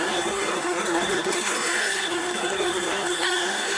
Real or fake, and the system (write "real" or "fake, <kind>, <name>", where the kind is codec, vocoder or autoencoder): fake, codec, SNAC